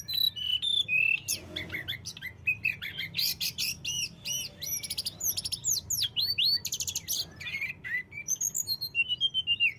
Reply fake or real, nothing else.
real